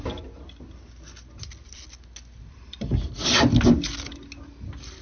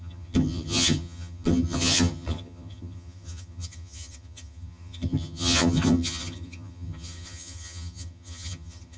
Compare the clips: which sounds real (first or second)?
first